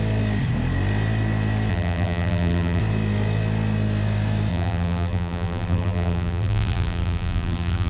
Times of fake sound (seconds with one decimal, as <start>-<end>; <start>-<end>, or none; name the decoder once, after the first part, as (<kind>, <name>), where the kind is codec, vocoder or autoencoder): 1.7-2.8 (vocoder, BigVGAN v2); 4.5-7.9